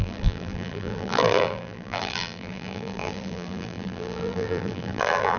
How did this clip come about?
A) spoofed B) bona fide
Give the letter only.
A